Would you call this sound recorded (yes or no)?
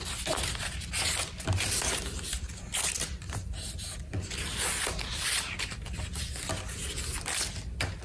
yes